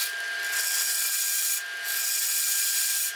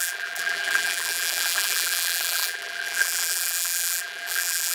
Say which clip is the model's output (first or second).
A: second